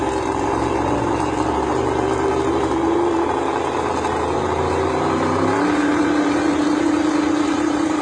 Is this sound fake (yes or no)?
yes